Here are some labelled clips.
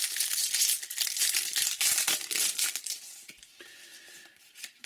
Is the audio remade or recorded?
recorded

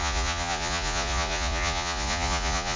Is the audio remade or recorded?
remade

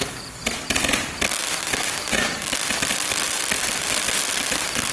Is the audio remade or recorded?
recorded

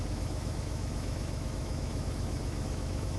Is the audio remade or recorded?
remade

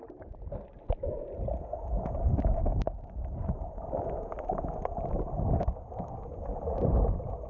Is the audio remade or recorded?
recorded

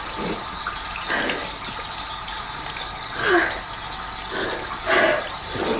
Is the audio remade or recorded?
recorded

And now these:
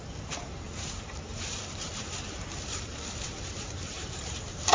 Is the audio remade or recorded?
remade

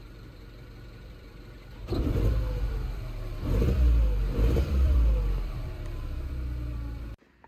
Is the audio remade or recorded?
remade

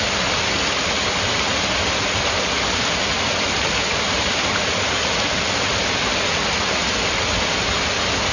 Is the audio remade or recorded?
recorded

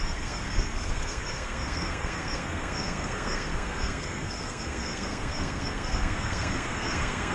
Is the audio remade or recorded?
remade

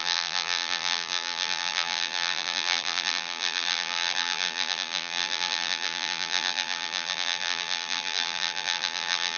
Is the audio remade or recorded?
remade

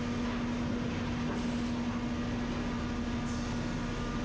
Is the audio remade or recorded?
recorded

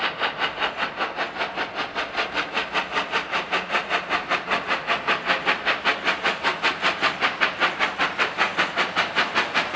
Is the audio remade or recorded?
recorded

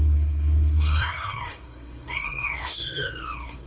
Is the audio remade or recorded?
remade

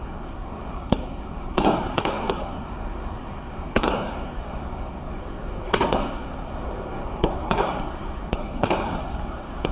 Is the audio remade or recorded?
remade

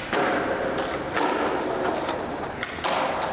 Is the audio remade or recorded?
recorded